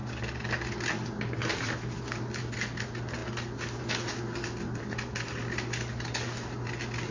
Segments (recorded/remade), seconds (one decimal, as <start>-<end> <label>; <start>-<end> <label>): 0.0-7.1 recorded